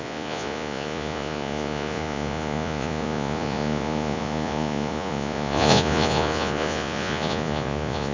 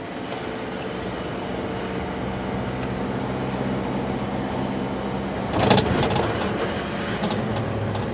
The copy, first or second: first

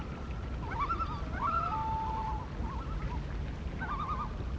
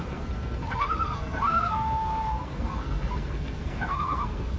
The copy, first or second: second